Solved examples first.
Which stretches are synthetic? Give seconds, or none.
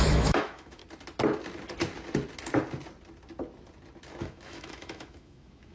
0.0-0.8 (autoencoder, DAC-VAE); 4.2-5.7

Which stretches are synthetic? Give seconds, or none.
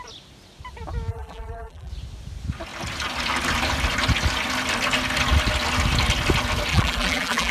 1.1-1.9 (vocoder, BigVGAN v2); 6.7-7.5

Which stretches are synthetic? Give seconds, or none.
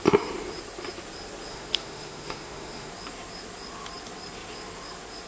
1.5-2.9 (autoencoder, DAC-VAE)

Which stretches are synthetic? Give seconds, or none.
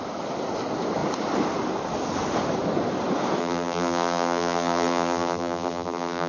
3.4-6.3 (vocoder, BigVGAN v2)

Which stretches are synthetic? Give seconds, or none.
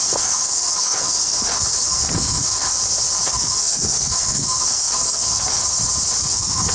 0.0-2.8 (codec, SNAC); 3.3-5.6; 6.2-6.7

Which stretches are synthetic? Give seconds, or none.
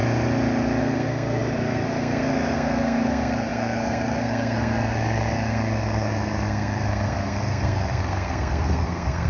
0.8-9.3 (codec, SNAC)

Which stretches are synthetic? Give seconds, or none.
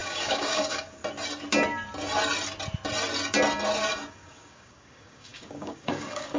0.0-1.0 (codec, DAC); 4.1-6.4